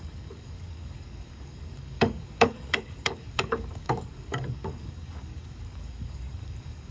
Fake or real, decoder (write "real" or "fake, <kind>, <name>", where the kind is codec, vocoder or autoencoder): fake, codec, DAC